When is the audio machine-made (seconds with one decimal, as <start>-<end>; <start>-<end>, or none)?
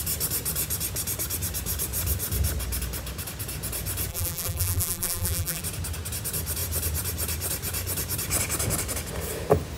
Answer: 4.1-5.6